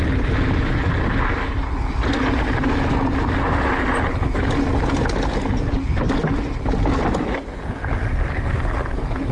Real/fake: real